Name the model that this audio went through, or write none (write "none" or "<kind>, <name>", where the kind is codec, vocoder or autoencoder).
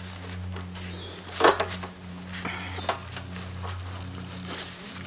none